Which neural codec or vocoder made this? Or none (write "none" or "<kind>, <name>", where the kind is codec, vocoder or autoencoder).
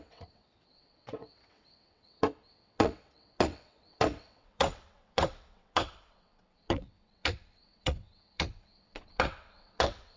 vocoder, WaveNeXt